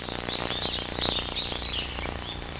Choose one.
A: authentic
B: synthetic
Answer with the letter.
B